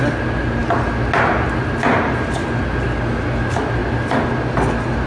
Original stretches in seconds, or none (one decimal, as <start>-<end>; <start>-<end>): 0.0-5.1